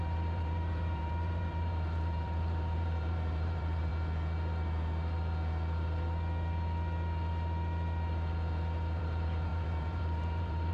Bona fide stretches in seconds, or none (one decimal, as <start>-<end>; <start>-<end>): 3.9-9.0